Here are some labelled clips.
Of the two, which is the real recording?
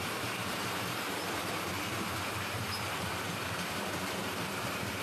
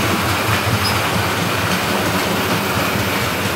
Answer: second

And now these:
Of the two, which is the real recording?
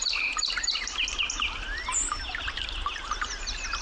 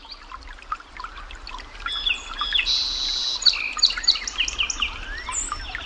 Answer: second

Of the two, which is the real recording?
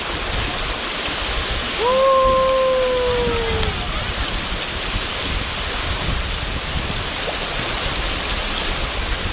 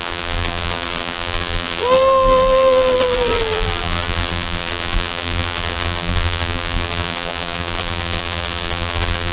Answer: first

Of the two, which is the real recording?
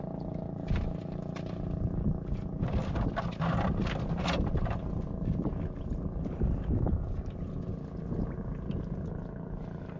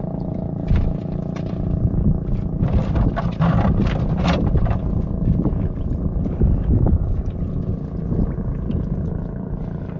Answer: first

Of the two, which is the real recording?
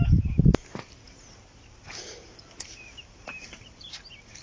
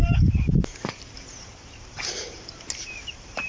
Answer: first